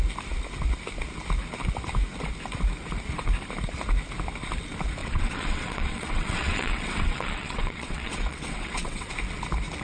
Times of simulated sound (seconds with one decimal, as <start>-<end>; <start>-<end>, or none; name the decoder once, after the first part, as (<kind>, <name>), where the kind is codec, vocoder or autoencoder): 5.0-9.1 (vocoder, WaveNeXt)